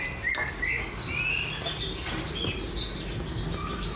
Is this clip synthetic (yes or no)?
no